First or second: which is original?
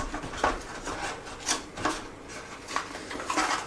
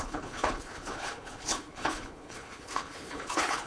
first